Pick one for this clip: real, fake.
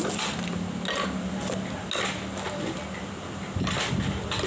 real